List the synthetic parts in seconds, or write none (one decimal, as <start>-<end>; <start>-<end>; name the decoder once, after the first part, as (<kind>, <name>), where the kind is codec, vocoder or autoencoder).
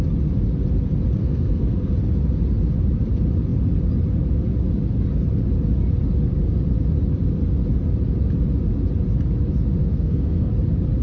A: 1.2-1.9 (codec, SNAC); 9.8-10.5